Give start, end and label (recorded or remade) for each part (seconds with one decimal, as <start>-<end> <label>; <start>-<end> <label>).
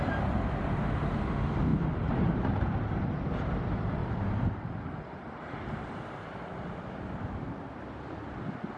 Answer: 0.0-1.7 recorded; 1.7-3.0 remade; 3.0-4.0 recorded; 4.0-7.8 remade; 7.8-8.8 recorded